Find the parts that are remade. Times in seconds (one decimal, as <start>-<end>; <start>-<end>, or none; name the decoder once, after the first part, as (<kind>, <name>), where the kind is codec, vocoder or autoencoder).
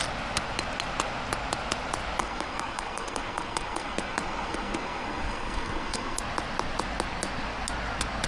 2.2-6.2 (codec, SNAC)